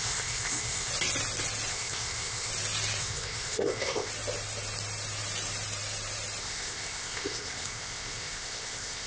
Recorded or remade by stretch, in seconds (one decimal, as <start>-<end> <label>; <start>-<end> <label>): 0.0-0.9 remade; 0.9-1.7 recorded; 1.7-2.5 remade; 2.5-3.0 recorded; 3.0-4.1 remade; 4.1-6.4 recorded; 6.4-9.1 remade

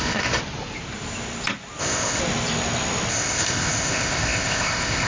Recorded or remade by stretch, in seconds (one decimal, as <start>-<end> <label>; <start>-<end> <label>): 0.0-0.4 remade; 0.4-1.8 recorded; 1.8-2.2 remade; 2.2-3.1 recorded; 3.1-5.1 remade